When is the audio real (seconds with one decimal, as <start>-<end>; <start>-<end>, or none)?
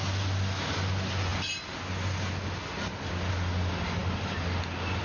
0.0-5.0